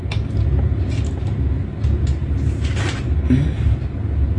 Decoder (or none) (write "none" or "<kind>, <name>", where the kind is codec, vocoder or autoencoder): none